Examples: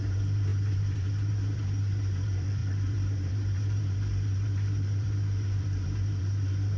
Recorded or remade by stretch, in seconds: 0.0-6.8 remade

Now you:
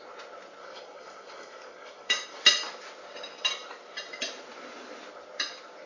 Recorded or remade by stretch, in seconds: 0.0-0.6 recorded; 0.6-2.4 remade; 2.4-5.9 recorded

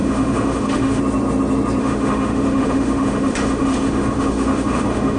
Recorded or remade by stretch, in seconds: 0.0-1.0 remade; 1.0-1.8 recorded; 1.8-5.2 remade

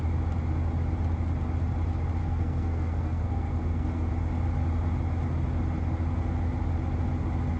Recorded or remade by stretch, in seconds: 0.0-2.2 recorded; 2.2-4.1 remade; 4.1-7.6 recorded